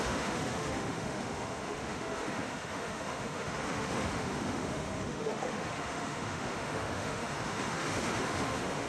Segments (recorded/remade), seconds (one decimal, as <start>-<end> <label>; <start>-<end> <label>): 0.0-8.9 remade